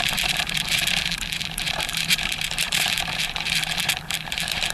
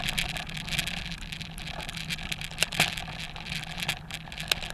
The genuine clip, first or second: second